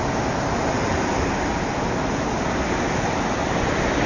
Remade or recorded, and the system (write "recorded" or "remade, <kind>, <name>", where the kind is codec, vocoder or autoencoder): recorded